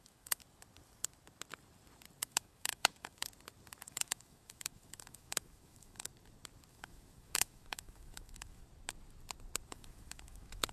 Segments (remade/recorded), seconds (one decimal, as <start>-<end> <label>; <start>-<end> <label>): 0.0-0.4 remade; 0.4-2.2 recorded; 2.2-3.2 remade; 3.2-3.9 recorded; 3.9-6.1 remade; 6.1-6.7 recorded; 6.7-8.6 remade; 8.6-9.7 recorded; 9.7-10.7 remade